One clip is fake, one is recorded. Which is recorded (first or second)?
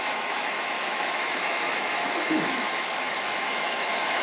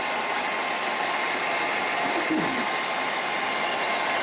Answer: second